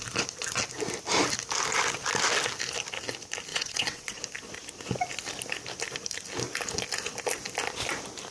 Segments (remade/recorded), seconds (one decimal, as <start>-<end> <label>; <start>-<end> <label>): 0.0-3.5 recorded; 3.5-4.2 remade; 4.2-8.3 recorded